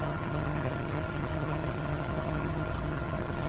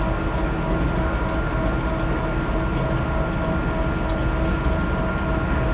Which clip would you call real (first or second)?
second